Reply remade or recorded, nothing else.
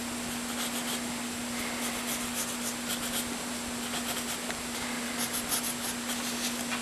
recorded